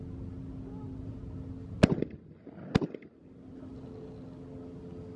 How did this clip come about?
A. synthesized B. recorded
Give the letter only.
B